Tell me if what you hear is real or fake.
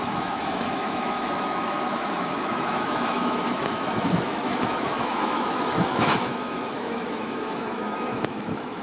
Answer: fake